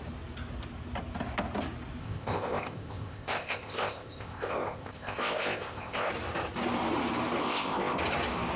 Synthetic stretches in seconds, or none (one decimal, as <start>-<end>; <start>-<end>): 2.0-6.1; 7.4-8.0

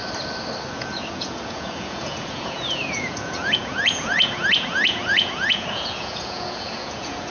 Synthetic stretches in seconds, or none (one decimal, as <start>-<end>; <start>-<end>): 0.7-7.3

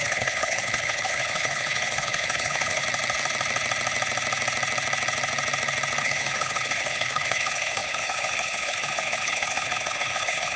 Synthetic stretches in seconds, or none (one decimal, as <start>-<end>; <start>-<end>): 0.0-2.8; 6.0-10.6

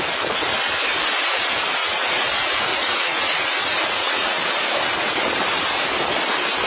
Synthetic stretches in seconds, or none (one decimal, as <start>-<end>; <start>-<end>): 1.8-2.3; 2.7-4.4

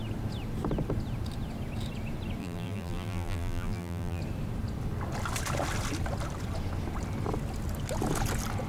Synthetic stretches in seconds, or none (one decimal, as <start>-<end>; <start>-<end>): 2.4-4.2

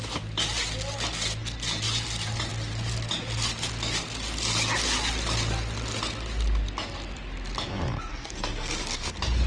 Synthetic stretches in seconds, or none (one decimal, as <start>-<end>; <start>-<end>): 8.1-9.1

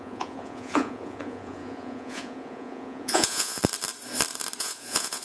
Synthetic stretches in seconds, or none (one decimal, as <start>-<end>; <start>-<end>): 0.0-3.6; 4.6-5.2